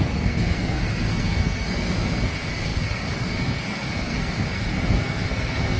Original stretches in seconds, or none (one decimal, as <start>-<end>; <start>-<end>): none